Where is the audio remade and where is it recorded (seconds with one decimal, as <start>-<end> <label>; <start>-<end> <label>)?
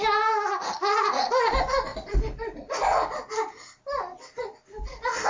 0.0-5.3 recorded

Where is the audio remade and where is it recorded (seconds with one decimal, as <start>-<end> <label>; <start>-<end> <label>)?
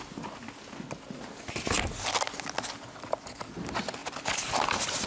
0.0-5.1 recorded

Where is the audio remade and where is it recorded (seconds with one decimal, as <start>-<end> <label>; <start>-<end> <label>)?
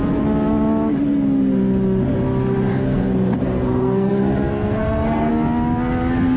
0.0-2.7 recorded; 2.7-5.3 remade; 5.3-6.4 recorded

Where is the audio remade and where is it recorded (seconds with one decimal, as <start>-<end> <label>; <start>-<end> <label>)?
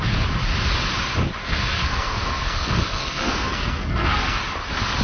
0.0-1.4 recorded; 1.4-4.4 remade; 4.4-5.0 recorded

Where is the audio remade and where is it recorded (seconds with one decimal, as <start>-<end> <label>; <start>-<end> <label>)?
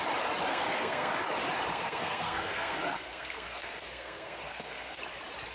0.0-0.5 recorded; 0.5-1.1 remade; 1.1-1.7 recorded; 1.7-5.0 remade; 5.0-5.5 recorded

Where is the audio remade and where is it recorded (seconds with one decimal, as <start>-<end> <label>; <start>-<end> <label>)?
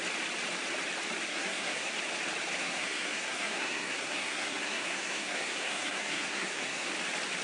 0.0-1.3 recorded; 1.3-1.9 remade; 1.9-2.6 recorded; 2.6-6.9 remade; 6.9-7.4 recorded